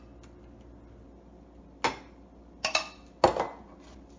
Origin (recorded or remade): recorded